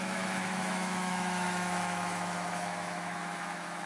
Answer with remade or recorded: remade